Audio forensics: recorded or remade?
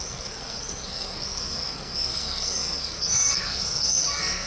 remade